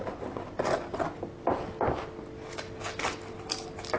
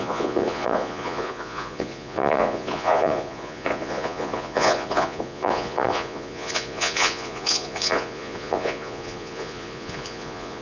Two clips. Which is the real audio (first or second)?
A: first